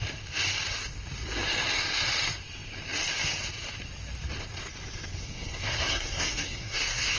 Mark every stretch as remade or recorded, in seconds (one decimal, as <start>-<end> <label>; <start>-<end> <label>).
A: 0.0-5.2 recorded; 5.2-7.2 remade